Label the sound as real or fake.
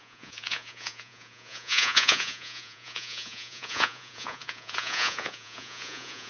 fake